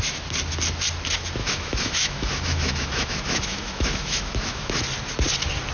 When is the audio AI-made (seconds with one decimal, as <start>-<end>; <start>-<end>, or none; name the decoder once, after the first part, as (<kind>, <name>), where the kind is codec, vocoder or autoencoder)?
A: 1.4-4.7 (autoencoder, DAC-VAE)